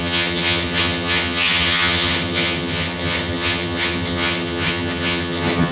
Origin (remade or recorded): remade